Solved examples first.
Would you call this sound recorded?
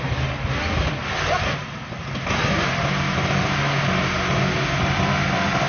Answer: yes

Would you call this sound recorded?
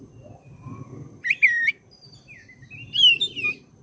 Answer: yes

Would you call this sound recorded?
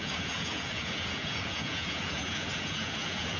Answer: no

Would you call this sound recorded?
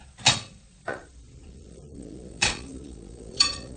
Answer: no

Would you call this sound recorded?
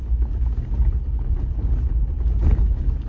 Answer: yes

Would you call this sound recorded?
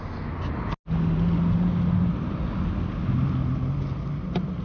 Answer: yes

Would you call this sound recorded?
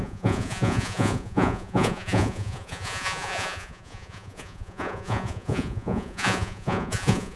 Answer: no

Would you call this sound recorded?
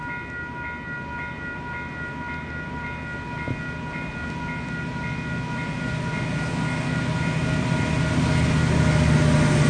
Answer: yes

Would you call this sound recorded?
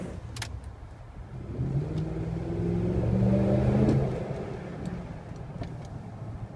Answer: yes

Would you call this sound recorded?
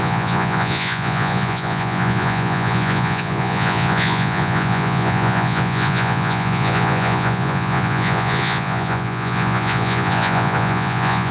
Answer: no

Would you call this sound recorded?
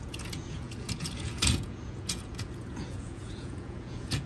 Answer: no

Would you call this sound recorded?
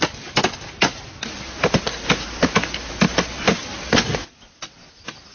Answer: yes